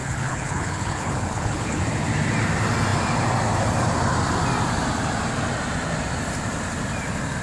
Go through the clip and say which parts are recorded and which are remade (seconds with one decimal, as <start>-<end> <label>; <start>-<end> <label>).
0.0-1.8 remade; 1.8-7.4 recorded